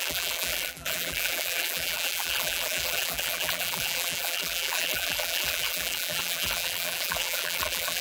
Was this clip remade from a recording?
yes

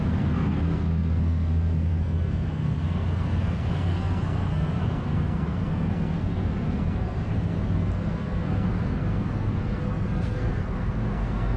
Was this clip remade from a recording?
yes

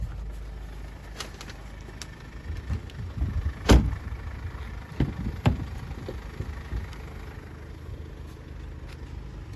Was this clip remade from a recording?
no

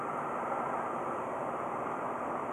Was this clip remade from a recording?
no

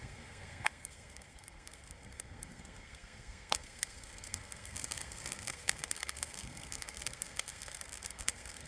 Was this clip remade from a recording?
yes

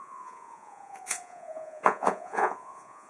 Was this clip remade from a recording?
yes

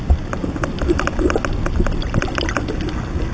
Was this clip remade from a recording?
no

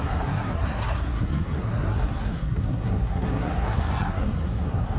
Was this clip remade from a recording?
yes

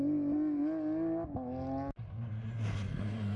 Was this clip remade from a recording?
no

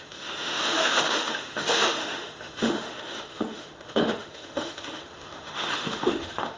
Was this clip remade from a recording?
yes